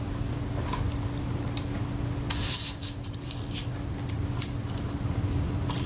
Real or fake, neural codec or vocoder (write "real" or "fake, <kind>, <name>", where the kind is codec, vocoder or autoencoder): real